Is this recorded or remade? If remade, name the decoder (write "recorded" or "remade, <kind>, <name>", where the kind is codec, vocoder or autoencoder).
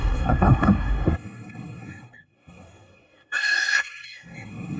remade, codec, SNAC